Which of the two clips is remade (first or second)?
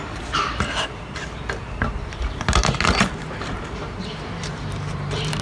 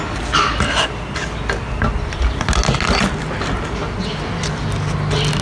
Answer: first